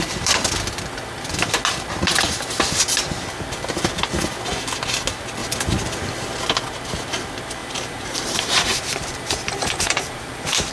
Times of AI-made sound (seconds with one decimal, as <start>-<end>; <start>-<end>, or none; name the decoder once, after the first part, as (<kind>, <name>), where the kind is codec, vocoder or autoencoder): 7.6-10.7 (vocoder, BigVGAN v2)

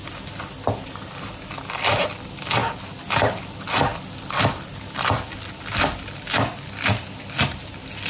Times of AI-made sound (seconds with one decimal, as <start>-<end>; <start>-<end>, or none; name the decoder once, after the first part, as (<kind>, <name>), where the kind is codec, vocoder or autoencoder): none